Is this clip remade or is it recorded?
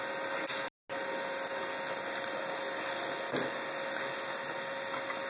recorded